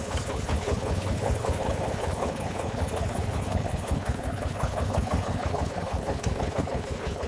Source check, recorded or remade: remade